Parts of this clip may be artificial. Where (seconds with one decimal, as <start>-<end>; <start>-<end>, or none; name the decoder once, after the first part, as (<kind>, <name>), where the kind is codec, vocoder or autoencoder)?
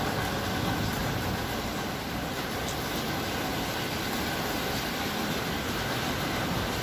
none